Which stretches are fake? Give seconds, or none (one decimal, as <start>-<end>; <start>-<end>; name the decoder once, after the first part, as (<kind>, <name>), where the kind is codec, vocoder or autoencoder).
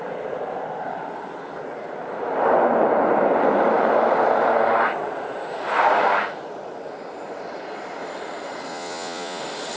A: 8.7-9.4 (vocoder, Vocos)